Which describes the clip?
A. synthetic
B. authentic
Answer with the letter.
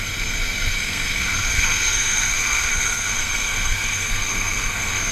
A